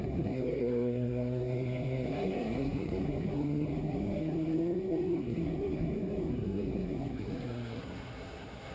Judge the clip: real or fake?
fake